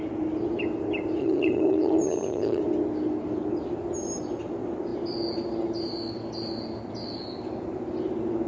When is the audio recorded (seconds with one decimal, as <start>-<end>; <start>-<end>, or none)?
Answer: 0.0-1.2; 2.6-8.5